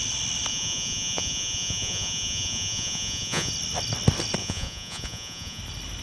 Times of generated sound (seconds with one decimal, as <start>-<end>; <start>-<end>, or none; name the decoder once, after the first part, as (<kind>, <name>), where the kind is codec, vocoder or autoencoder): 0.5-3.5 (vocoder, Vocos); 4.4-5.6